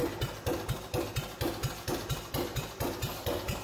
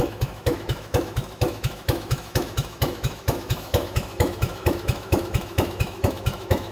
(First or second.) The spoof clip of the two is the second